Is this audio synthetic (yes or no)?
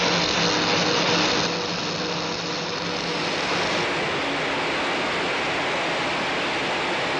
no